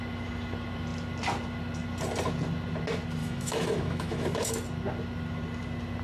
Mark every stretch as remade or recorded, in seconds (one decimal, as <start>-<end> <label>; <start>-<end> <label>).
0.0-3.2 recorded; 3.2-4.5 remade; 4.5-6.0 recorded